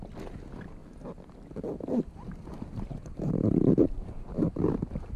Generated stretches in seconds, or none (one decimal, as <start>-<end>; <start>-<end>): 2.5-4.8